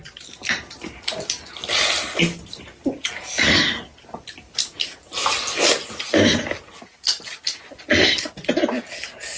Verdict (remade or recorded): recorded